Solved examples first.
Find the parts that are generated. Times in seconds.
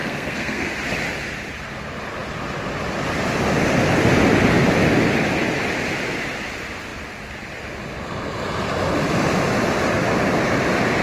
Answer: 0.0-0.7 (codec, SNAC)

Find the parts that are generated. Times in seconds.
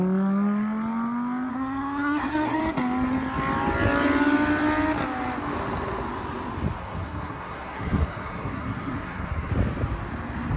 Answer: 1.5-2.6 (codec, SNAC); 6.8-9.5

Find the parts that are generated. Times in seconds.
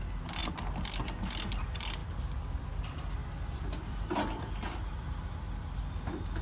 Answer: none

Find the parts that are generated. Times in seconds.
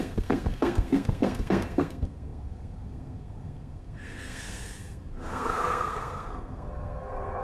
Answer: 0.0-7.4 (codec, SNAC)